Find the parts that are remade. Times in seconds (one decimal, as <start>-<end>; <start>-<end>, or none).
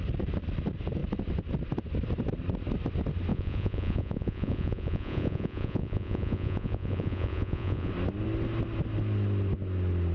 3.3-7.9